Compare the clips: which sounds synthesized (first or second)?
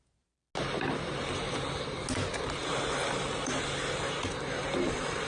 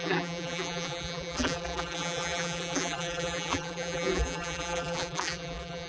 second